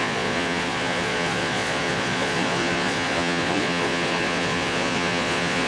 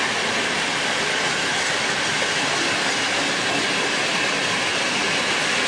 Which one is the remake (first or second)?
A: first